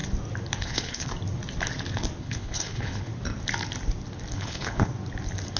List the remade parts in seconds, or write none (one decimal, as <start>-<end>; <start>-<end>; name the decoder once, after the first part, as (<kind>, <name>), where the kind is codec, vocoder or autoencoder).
0.6-1.1 (codec, HILCodec); 2.2-3.1; 4.3-4.9